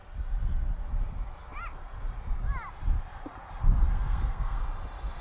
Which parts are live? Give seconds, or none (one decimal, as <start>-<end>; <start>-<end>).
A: 0.0-3.9; 4.6-5.2